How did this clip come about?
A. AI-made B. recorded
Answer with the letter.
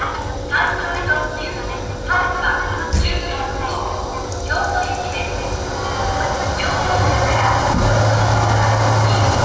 B